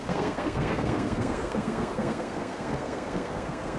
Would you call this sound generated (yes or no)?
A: yes